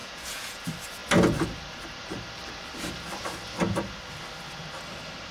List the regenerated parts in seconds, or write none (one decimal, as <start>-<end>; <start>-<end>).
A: 0.0-0.6